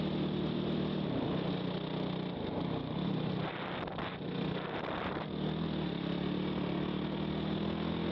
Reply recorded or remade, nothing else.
recorded